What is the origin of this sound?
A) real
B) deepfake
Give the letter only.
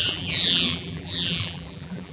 B